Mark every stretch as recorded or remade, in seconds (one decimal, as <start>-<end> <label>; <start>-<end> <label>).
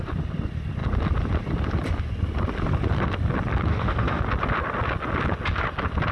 0.0-3.7 recorded; 3.7-4.2 remade; 4.2-6.1 recorded